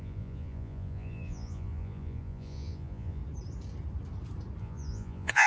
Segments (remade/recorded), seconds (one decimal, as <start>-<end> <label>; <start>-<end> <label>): 0.0-3.2 remade; 3.2-4.6 recorded; 4.6-5.5 remade